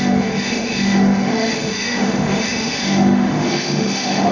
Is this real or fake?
fake